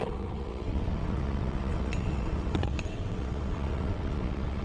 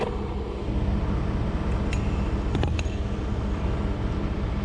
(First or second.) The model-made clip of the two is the first